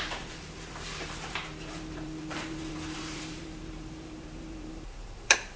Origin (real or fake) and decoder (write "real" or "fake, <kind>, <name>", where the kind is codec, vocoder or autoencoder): fake, vocoder, BigVGAN v2